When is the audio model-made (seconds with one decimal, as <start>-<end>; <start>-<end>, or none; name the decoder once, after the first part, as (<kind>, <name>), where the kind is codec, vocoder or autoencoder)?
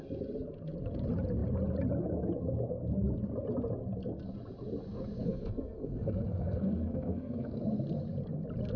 5.2-7.6 (codec, SNAC)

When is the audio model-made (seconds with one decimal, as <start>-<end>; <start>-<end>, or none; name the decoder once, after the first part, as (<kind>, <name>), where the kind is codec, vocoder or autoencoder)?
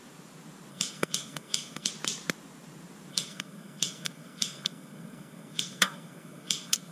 0.7-1.9 (codec, SNAC); 3.1-6.9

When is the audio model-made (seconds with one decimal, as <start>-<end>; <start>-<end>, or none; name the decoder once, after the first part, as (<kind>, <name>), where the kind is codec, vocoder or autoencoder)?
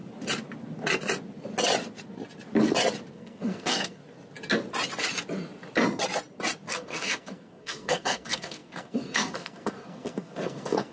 3.1-4.0 (codec, SNAC); 6.7-10.9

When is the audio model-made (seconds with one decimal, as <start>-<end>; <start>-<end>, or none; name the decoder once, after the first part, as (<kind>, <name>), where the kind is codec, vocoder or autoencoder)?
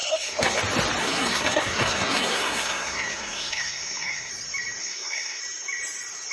0.0-0.6 (codec, SNAC); 1.0-4.3; 4.8-5.4